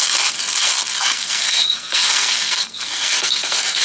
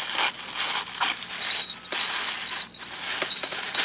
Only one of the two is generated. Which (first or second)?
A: first